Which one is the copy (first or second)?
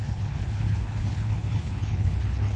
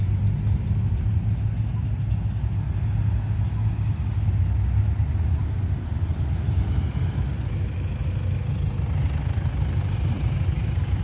first